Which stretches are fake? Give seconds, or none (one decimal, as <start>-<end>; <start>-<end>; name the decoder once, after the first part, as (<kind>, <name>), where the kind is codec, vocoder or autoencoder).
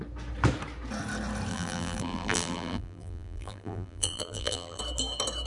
1.5-4.8 (vocoder, BigVGAN v2)